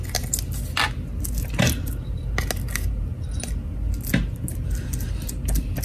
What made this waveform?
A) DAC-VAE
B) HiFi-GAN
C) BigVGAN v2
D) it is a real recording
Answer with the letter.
D